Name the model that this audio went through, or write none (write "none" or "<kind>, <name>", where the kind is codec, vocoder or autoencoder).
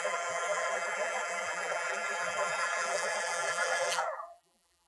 vocoder, BigVGAN v2